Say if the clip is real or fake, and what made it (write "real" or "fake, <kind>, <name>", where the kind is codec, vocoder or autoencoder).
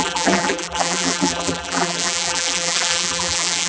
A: fake, vocoder, BigVGAN v2